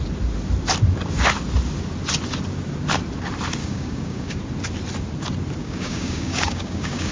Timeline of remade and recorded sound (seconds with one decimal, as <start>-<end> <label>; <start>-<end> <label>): 0.0-3.6 recorded; 3.6-4.4 remade; 4.4-5.6 recorded; 5.6-7.1 remade